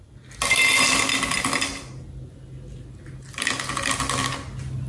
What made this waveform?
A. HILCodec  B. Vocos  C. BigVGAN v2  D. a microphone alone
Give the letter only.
D